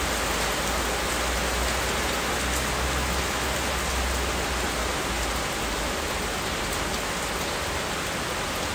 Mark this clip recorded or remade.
recorded